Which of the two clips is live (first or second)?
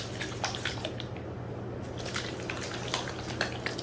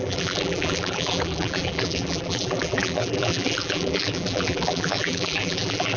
first